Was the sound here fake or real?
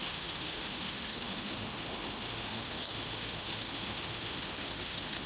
fake